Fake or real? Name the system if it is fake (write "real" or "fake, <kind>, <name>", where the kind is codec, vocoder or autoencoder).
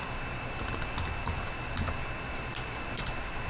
real